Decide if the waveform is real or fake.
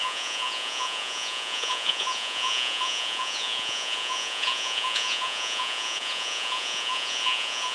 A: fake